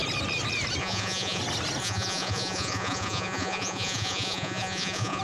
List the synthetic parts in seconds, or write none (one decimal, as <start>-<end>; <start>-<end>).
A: 0.8-1.4; 1.8-5.2